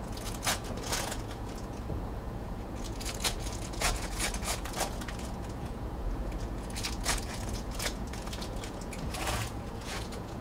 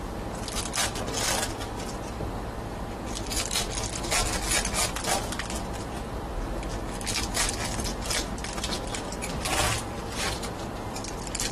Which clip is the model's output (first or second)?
first